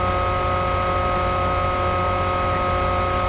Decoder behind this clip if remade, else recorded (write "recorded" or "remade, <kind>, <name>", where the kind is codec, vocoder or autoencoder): recorded